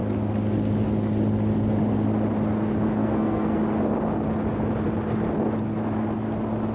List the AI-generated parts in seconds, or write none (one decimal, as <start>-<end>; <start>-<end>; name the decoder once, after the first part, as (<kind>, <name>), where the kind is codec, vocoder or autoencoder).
3.0-3.6 (codec, SNAC)